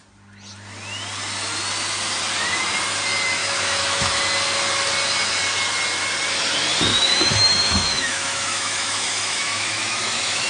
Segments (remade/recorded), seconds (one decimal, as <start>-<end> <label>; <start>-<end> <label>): 0.0-3.4 recorded; 3.4-4.2 remade; 4.2-6.9 recorded; 6.9-10.5 remade